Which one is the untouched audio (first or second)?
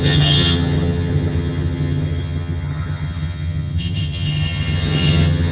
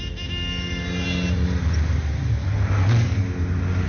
second